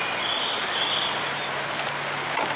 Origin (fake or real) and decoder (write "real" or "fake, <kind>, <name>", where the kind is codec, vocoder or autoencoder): real